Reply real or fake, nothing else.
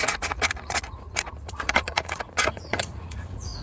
fake